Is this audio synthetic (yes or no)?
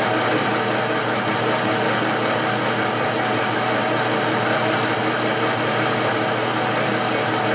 no